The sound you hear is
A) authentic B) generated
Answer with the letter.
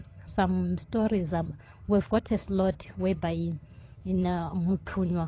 B